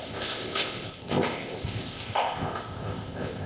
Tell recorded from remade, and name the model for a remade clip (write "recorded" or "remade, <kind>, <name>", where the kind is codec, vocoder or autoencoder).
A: remade, codec, ZipCodec